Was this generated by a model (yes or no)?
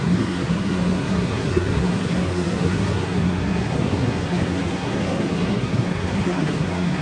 yes